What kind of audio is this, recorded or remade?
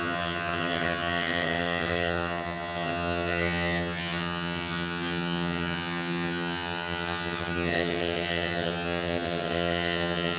remade